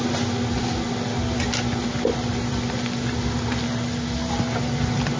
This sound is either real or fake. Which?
real